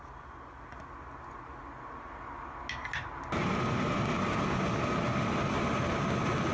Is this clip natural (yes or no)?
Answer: yes